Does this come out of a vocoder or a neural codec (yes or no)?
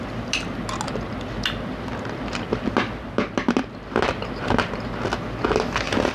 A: no